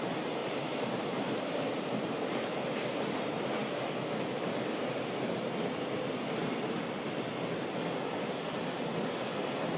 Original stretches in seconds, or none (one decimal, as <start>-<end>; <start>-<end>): 0.0-0.4; 2.2-9.8